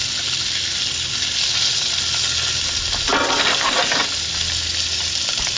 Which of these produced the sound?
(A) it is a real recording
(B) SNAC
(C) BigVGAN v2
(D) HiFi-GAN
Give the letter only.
A